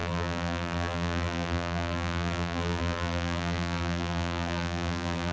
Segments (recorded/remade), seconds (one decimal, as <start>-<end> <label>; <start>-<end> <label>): 0.0-5.3 remade